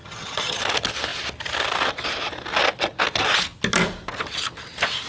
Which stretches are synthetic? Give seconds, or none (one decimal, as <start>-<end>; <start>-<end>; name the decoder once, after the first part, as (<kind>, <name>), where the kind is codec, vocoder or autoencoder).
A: 0.0-0.6 (vocoder, HiFi-GAN)